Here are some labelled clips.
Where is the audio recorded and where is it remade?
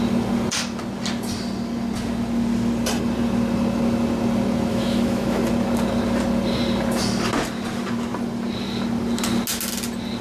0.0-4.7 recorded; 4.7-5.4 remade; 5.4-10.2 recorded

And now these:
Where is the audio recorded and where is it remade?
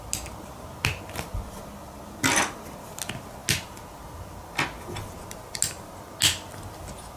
0.0-7.2 recorded